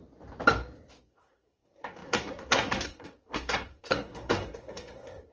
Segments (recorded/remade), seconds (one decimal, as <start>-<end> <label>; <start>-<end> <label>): 0.0-1.0 recorded; 1.0-5.3 remade